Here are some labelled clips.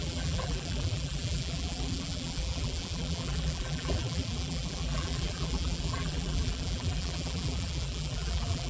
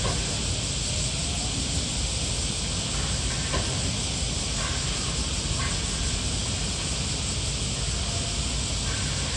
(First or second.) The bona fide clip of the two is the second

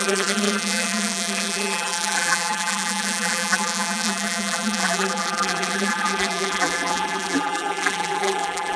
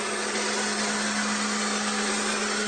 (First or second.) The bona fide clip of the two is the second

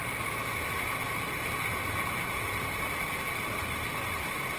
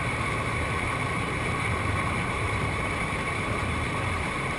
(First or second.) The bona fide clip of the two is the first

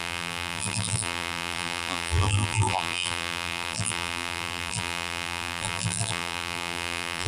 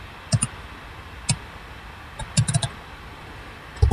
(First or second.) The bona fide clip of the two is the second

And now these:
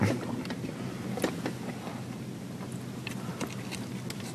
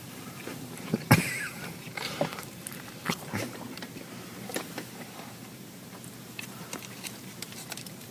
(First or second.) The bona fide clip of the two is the first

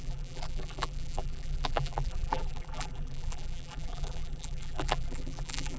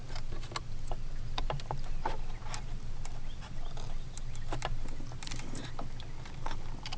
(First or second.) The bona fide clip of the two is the second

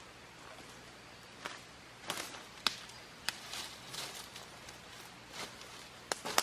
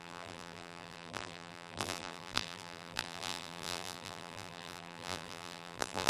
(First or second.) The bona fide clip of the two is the first